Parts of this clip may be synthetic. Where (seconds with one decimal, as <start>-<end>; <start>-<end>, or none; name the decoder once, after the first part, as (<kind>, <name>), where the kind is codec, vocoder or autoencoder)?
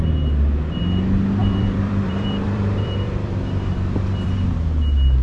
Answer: 1.4-4.5 (vocoder, BigVGAN v2)